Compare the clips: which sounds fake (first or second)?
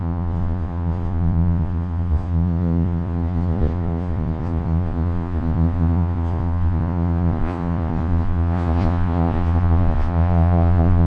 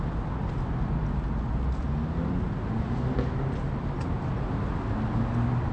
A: first